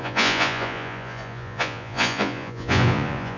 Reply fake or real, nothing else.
fake